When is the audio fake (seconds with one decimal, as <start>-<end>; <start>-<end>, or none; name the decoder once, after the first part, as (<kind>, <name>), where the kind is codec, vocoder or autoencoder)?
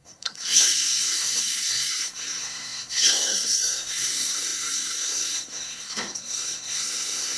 0.0-7.4 (codec, SNAC)